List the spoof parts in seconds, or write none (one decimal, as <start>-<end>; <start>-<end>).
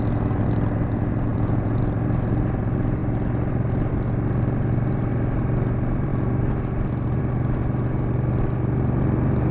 1.3-1.8